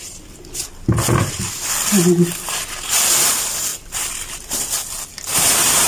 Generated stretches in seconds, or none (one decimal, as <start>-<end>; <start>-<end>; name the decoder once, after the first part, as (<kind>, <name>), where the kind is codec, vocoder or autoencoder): none